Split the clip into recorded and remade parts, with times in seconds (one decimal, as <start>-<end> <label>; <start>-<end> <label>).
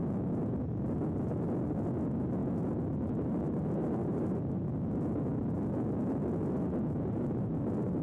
0.0-4.0 recorded; 4.0-4.7 remade; 4.7-8.0 recorded